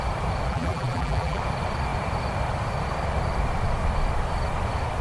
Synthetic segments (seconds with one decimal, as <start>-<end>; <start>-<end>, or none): 0.5-1.4